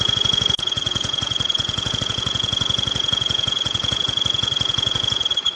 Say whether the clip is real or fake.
fake